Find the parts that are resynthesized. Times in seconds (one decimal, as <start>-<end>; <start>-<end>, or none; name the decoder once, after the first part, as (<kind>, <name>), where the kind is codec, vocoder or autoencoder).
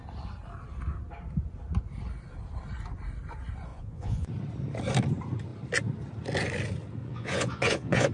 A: 3.7-4.3 (vocoder, Vocos); 7.0-8.1